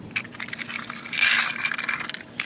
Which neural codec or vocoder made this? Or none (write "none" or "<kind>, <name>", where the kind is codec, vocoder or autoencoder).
none